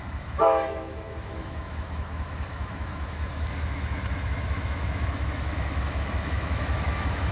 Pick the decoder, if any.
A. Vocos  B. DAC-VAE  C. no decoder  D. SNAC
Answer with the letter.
B